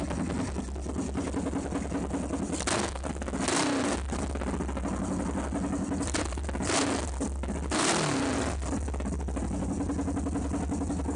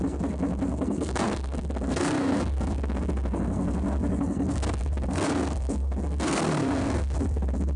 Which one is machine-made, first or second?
second